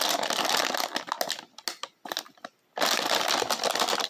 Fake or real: real